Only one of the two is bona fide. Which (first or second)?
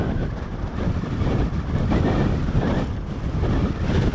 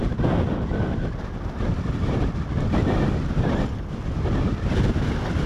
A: second